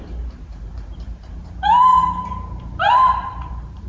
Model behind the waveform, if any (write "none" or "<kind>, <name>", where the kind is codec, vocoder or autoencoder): vocoder, BigVGAN v2